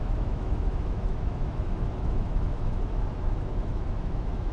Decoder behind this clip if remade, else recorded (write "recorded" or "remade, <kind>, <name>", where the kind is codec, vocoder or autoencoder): remade, autoencoder, DAC-VAE